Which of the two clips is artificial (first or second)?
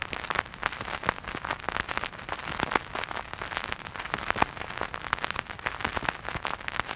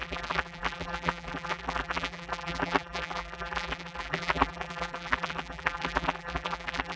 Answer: second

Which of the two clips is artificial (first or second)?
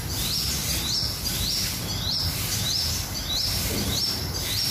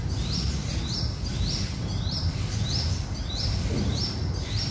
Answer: second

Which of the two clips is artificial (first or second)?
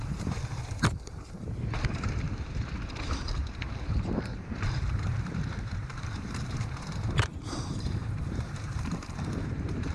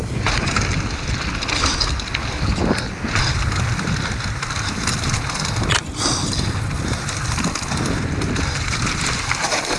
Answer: first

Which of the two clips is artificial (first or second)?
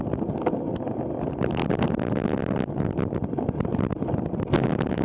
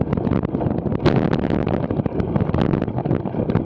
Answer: first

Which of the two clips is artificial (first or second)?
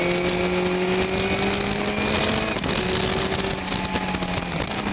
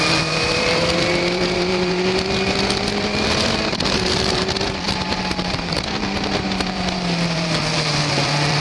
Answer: second